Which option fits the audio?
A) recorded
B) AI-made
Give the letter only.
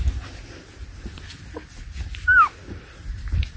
A